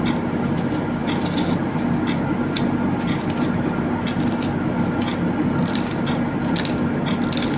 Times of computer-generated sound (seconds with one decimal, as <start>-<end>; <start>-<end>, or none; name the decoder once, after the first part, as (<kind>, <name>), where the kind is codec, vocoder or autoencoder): none